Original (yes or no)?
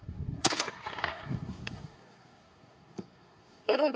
no